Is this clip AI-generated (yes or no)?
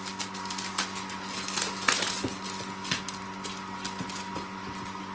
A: no